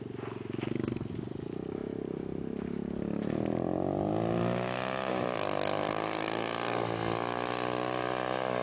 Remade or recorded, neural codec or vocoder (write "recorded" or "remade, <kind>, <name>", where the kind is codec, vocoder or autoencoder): recorded